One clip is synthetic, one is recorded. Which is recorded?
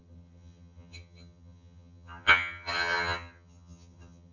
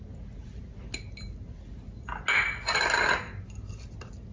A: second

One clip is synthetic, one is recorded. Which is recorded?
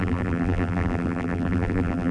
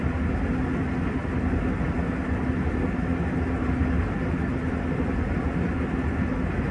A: second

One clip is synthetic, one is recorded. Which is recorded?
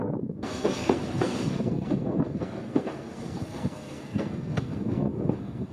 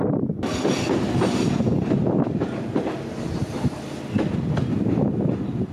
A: second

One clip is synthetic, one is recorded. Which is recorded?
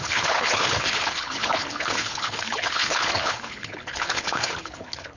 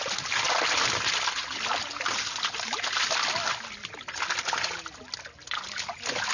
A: second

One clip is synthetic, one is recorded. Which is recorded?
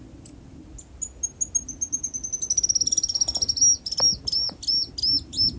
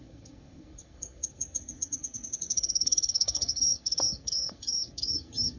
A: first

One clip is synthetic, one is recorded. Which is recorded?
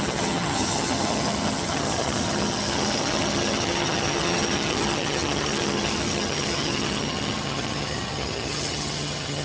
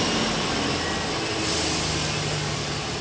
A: second